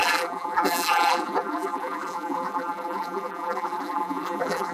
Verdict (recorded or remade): remade